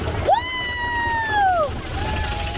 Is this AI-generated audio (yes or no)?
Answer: no